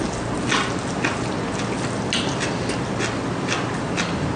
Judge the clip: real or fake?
real